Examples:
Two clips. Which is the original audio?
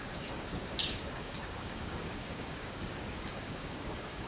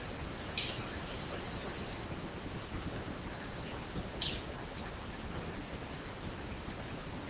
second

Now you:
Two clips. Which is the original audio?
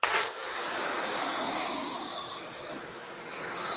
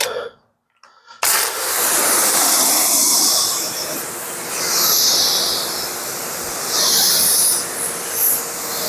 second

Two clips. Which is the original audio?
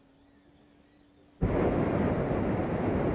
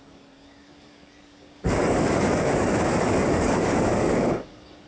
first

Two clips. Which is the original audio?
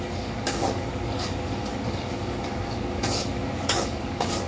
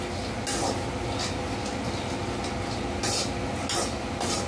second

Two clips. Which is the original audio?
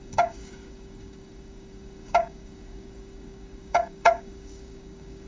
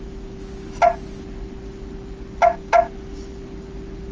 second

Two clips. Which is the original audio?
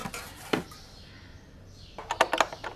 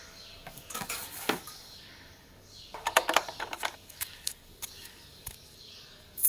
first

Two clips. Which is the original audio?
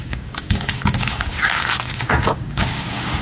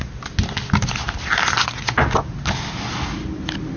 second